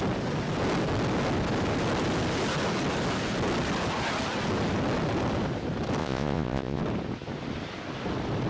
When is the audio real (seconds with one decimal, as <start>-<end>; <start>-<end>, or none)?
0.0-6.0; 6.8-8.5